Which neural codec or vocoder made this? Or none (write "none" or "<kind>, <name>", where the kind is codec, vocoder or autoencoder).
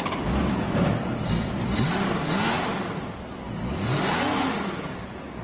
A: none